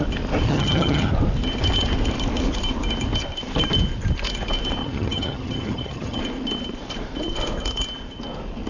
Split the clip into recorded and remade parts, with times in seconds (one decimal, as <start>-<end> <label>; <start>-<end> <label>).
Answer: 0.0-0.5 recorded; 0.5-1.1 remade; 1.1-4.8 recorded; 4.8-6.2 remade; 6.2-8.7 recorded